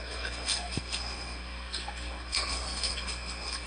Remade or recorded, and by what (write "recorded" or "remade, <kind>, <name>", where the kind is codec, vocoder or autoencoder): remade, codec, SNAC